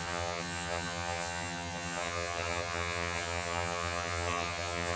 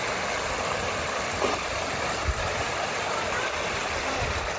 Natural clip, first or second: second